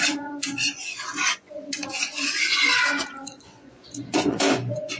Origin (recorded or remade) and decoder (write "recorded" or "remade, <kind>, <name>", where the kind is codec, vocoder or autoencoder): remade, vocoder, Vocos